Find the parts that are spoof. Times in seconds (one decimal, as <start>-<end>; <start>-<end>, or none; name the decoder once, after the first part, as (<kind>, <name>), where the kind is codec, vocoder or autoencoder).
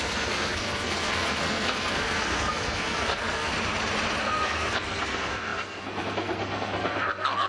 0.0-3.5 (codec, SNAC); 4.2-7.5